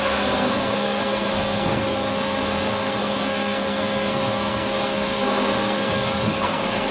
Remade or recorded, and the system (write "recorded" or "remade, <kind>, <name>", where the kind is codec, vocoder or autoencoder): remade, codec, SNAC